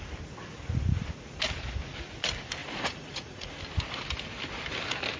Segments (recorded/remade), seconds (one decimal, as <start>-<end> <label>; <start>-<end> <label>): 0.0-2.6 recorded; 2.6-3.6 remade; 3.6-5.2 recorded

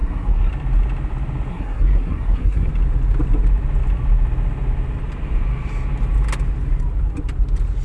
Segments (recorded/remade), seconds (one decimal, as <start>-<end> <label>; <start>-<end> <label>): 0.0-0.5 remade; 0.5-1.5 recorded; 1.5-2.7 remade; 2.7-7.8 recorded

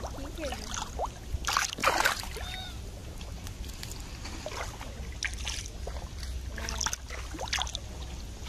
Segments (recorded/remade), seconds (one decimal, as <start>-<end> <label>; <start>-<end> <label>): 0.0-8.5 recorded

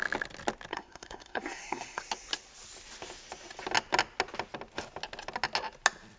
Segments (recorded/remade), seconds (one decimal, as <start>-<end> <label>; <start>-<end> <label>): 0.0-0.7 recorded; 0.7-2.0 remade; 2.0-6.2 recorded

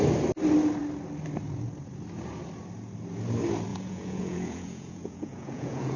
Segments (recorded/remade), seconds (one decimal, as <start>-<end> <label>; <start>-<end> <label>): 0.0-3.7 recorded; 3.7-6.0 remade

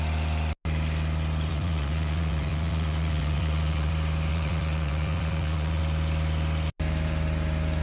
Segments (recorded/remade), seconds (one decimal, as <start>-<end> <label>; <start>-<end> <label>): 0.0-1.5 recorded; 1.5-3.9 remade; 3.9-4.3 recorded; 4.3-5.8 remade; 5.8-7.8 recorded